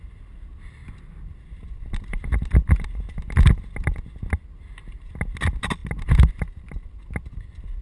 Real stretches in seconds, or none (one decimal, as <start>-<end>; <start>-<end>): 0.0-7.8